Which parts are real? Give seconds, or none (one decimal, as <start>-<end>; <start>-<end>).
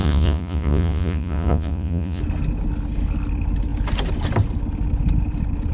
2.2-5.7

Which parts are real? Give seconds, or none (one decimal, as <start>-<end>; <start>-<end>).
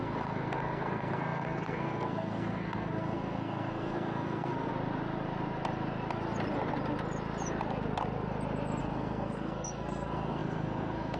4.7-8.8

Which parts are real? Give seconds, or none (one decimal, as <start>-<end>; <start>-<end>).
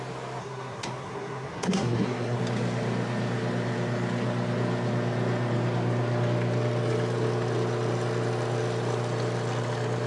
0.0-0.4; 2.4-10.1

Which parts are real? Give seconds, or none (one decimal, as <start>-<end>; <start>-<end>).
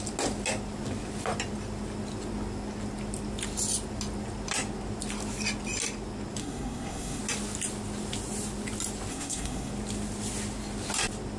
0.0-6.4; 7.2-9.1; 9.7-11.4